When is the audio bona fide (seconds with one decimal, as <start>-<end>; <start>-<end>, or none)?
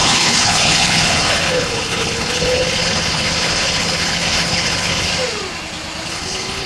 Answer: 5.1-6.1